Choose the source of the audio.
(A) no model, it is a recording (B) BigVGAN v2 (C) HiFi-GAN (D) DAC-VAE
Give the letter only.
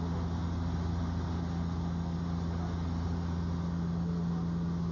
A